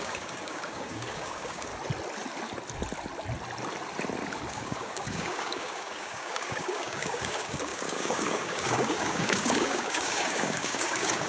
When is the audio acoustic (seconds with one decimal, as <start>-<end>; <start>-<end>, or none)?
1.7-4.5